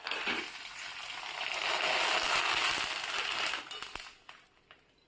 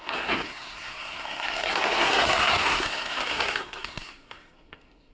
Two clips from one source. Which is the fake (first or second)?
second